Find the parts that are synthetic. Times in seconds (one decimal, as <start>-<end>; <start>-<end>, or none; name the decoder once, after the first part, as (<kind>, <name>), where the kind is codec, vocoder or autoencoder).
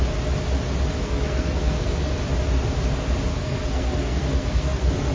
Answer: 1.0-2.1 (codec, SNAC); 3.3-5.1